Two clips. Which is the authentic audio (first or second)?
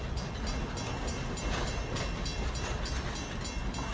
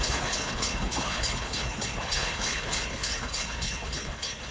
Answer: first